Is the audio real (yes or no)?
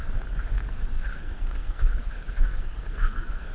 no